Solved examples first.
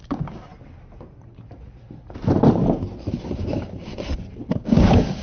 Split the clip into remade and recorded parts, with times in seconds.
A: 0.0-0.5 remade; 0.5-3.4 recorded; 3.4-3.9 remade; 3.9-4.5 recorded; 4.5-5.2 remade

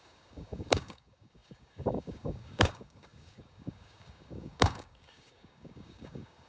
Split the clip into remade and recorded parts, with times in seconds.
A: 0.0-6.5 remade

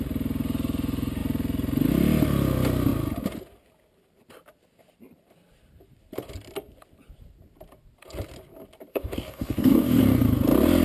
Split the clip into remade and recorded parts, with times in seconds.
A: 0.0-8.9 recorded; 8.9-10.0 remade; 10.0-10.8 recorded

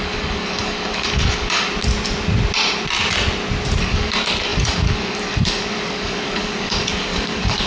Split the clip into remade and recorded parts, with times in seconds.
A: 0.0-1.7 remade; 1.7-3.8 recorded; 3.8-7.7 remade

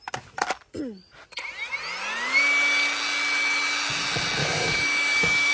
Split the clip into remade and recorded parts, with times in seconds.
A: 0.0-4.4 recorded; 4.4-5.5 remade

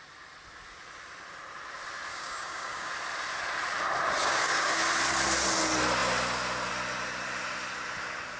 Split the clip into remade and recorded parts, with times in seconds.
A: 0.0-2.1 recorded; 2.1-2.9 remade; 2.9-4.2 recorded; 4.2-4.8 remade; 4.8-8.4 recorded

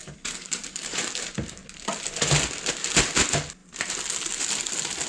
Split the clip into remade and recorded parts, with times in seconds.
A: 0.0-1.0 remade; 1.0-5.1 recorded

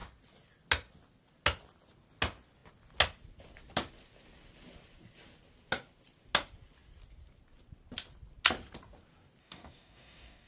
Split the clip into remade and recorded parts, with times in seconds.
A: 0.0-9.4 recorded; 9.4-10.5 remade